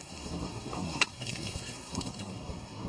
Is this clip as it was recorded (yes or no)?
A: no